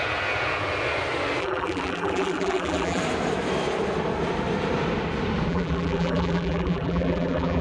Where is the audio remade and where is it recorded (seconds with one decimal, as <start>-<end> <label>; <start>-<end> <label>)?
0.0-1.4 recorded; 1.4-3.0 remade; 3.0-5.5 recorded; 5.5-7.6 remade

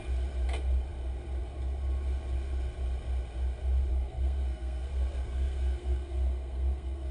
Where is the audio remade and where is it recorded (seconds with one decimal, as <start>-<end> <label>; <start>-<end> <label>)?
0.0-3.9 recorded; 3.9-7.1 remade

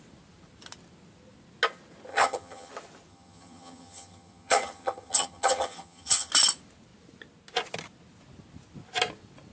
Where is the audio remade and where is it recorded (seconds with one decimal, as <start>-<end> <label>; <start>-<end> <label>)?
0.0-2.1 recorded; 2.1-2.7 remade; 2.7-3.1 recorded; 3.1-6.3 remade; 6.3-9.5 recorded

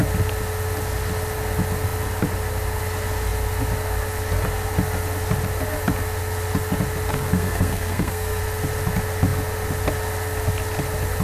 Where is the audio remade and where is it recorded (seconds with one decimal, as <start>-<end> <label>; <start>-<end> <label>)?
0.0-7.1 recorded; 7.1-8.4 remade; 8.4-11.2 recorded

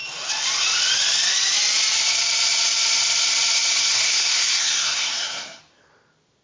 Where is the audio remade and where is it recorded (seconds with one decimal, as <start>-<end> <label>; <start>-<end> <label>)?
0.0-3.9 recorded; 3.9-5.6 remade; 5.6-6.4 recorded

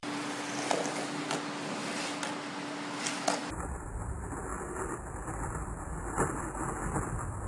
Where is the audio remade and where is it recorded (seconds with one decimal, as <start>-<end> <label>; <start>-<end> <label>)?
0.0-0.7 remade; 0.7-3.4 recorded; 3.4-3.9 remade; 3.9-7.5 recorded

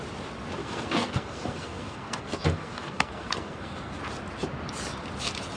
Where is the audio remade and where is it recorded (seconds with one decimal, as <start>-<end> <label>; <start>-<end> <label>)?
0.0-0.6 recorded; 0.6-4.0 remade; 4.0-5.6 recorded

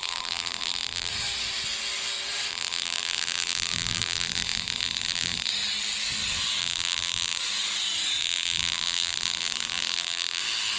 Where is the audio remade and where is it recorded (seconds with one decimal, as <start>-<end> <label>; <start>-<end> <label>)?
0.0-1.1 remade; 1.1-2.5 recorded; 2.5-5.5 remade; 5.5-6.6 recorded; 6.6-7.4 remade; 7.4-8.2 recorded; 8.2-10.4 remade; 10.4-10.8 recorded